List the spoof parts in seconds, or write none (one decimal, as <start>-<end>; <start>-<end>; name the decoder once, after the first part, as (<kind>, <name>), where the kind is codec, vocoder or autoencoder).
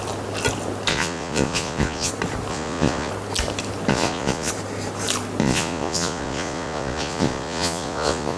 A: 0.9-2.1 (vocoder, Vocos); 2.5-3.1; 3.9-4.5; 5.4-8.4